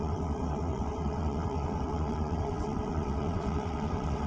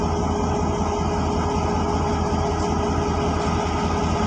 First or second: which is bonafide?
second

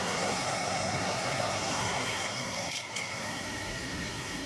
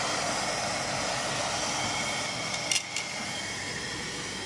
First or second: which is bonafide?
second